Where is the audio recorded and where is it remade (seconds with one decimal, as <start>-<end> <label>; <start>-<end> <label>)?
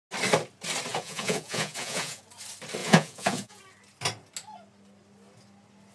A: 0.0-0.9 recorded; 0.9-2.2 remade; 2.2-2.8 recorded; 2.8-3.6 remade; 3.6-5.9 recorded